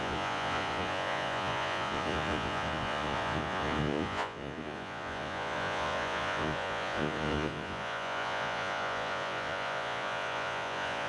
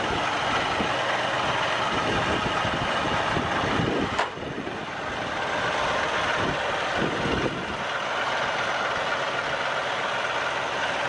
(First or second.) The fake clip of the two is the first